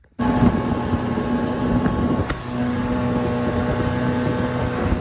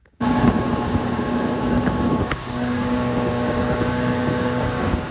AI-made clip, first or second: second